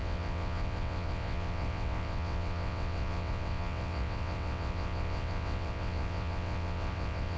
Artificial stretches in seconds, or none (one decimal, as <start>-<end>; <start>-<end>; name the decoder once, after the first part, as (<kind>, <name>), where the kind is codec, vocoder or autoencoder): 0.0-7.4 (vocoder, WaveNeXt)